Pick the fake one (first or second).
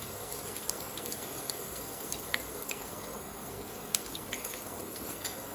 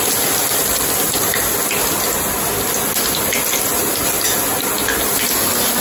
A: first